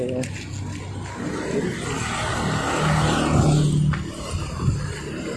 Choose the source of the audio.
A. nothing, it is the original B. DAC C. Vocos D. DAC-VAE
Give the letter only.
A